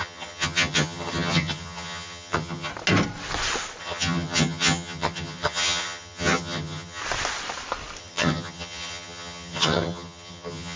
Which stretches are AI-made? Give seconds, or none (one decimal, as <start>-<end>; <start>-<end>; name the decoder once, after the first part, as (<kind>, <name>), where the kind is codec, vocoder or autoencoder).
0.0-2.7 (vocoder, HiFi-GAN); 3.8-7.0; 8.0-10.8